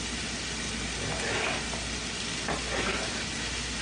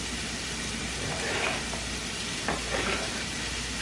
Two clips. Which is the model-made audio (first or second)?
second